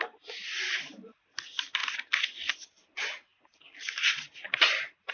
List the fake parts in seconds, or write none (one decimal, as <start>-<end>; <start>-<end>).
none